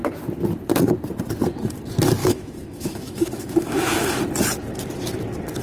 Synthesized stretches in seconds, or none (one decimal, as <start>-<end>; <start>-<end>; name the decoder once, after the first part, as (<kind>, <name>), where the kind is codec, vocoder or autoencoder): 2.2-4.2 (autoencoder, DAC-VAE)

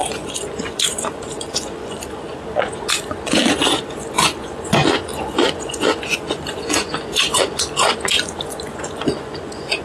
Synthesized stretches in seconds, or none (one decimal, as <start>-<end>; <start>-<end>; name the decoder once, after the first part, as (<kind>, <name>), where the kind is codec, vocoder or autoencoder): 0.0-9.8 (vocoder, Vocos)